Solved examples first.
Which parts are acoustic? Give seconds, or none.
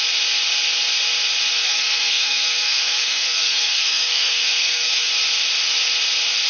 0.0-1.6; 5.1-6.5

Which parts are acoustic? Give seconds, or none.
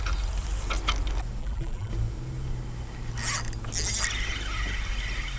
0.0-1.4; 1.9-5.4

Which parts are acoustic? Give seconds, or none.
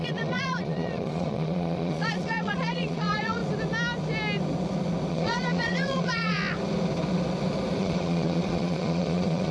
3.4-5.1; 6.4-7.8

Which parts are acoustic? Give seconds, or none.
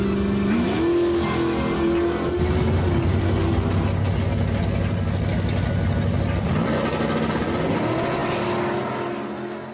0.0-9.7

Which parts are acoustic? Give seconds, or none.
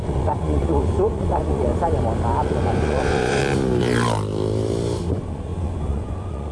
1.7-2.4; 3.4-5.1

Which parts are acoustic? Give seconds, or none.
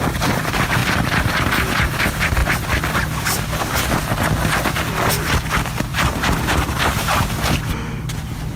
0.0-0.8; 1.5-5.9; 7.7-8.6